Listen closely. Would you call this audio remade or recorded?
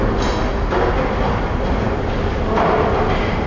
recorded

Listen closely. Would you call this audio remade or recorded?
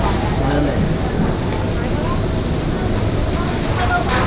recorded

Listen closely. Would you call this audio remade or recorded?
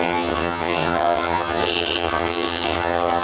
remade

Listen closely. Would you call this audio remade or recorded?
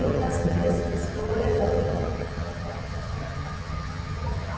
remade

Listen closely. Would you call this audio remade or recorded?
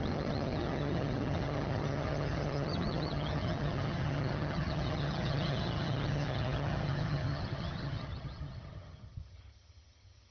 remade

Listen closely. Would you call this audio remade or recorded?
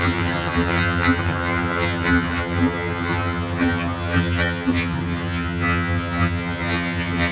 remade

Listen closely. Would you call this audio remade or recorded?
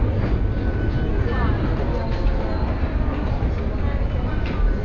recorded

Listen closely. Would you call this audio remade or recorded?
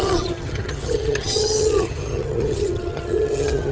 remade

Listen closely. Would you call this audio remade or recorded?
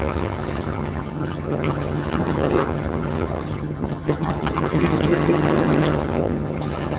remade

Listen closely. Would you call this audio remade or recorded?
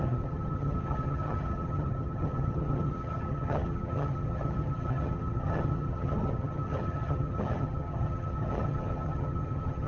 remade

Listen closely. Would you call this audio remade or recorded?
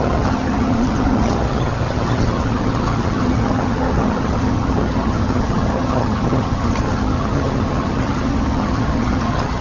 remade